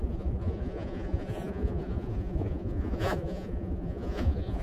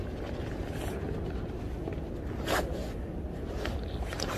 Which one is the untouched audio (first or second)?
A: second